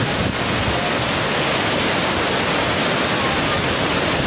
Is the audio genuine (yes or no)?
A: yes